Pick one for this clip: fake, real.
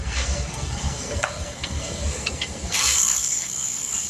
fake